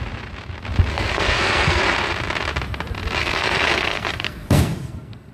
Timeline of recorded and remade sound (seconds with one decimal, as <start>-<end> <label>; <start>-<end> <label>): 0.0-0.9 recorded; 0.9-1.8 remade; 1.8-3.2 recorded; 3.2-5.3 remade